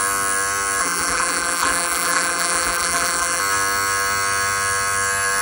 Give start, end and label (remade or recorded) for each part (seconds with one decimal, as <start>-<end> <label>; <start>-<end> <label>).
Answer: 0.0-0.8 recorded; 0.8-3.4 remade; 3.4-5.4 recorded